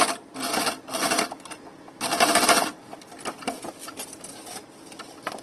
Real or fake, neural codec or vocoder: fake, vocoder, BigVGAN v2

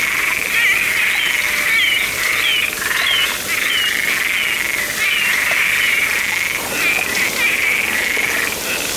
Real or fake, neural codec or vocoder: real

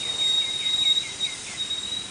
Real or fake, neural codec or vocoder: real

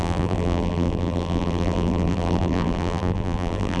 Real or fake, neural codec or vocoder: fake, vocoder, BigVGAN v2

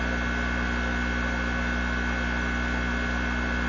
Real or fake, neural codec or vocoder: real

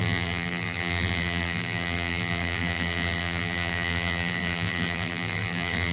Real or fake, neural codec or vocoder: fake, vocoder, BigVGAN v2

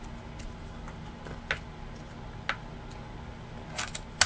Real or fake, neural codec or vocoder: real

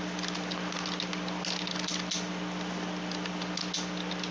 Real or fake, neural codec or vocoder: real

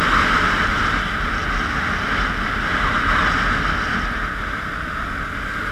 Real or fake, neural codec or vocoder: real